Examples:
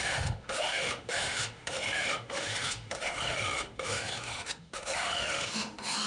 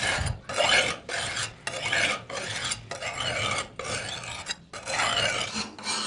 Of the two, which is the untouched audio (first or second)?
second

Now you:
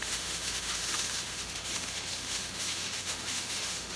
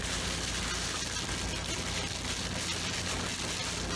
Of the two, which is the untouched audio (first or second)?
second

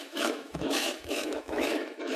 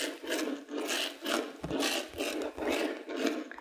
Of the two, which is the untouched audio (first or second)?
second